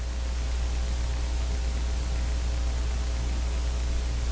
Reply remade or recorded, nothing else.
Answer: recorded